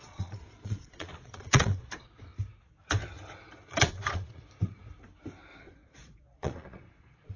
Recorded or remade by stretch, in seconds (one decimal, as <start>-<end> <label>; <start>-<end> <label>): 0.0-2.3 remade; 2.3-3.4 recorded; 3.4-4.8 remade; 4.8-5.6 recorded; 5.6-7.4 remade